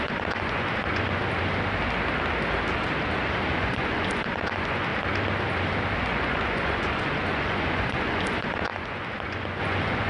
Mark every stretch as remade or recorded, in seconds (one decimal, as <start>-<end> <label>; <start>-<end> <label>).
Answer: 0.0-1.2 remade; 1.2-3.5 recorded; 3.5-4.9 remade; 4.9-6.0 recorded; 6.0-10.1 remade